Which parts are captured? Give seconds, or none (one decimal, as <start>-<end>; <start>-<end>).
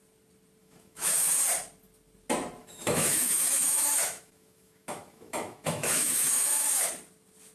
0.0-0.6; 1.4-2.6; 6.9-7.5